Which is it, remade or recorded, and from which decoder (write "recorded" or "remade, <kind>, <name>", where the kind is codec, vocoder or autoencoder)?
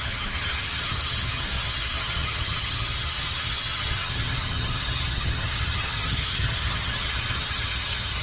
remade, vocoder, HiFi-GAN